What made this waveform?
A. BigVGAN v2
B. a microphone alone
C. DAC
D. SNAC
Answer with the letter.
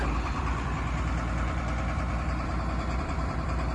A